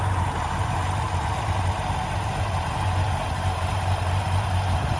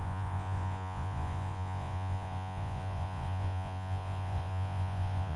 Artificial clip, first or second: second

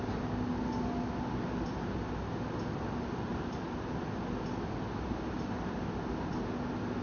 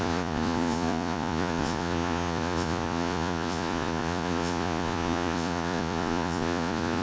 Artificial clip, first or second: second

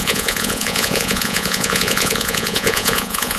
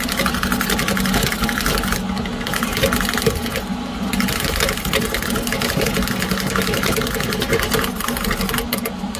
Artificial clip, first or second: first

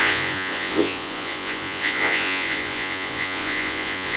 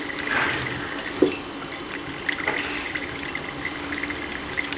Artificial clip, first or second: first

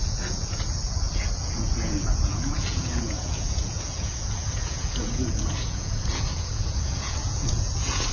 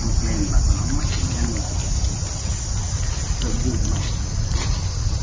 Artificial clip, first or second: first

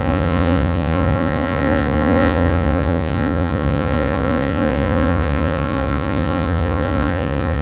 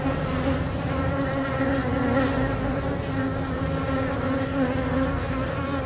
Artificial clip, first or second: first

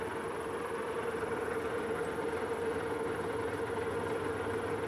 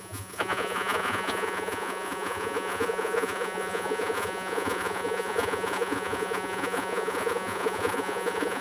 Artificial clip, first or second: second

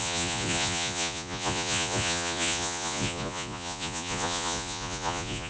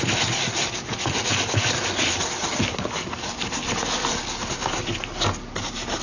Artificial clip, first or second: first